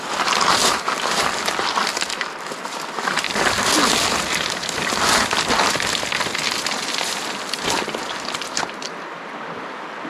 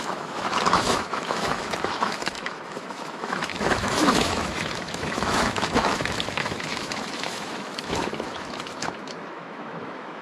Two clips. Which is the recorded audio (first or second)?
first